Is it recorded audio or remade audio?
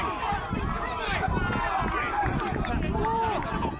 recorded